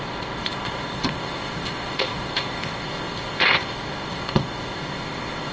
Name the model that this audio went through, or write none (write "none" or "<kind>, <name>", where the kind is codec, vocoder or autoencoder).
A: codec, ZipCodec